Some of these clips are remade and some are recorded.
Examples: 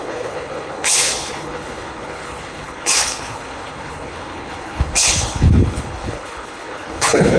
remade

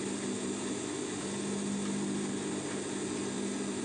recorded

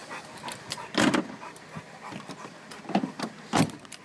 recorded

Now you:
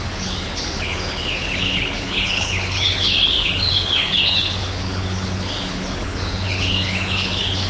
remade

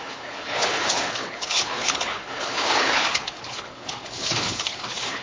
remade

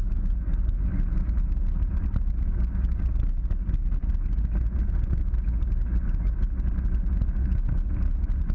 recorded